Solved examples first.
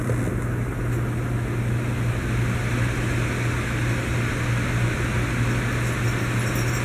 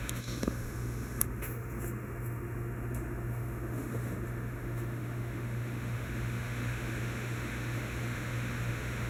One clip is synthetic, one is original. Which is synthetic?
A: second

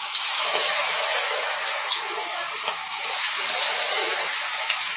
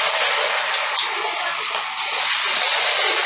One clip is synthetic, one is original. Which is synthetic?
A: first